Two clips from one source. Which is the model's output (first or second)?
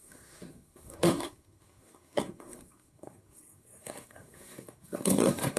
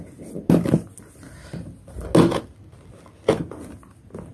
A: first